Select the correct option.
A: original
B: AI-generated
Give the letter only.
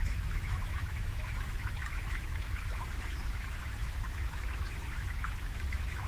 B